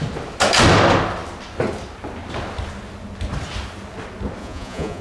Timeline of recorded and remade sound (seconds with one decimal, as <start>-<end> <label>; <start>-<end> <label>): 0.0-4.4 recorded; 4.4-5.0 remade